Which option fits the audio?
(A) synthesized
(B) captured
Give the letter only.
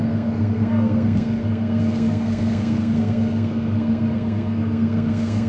A